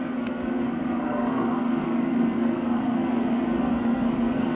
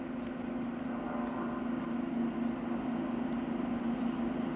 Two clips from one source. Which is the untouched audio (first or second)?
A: second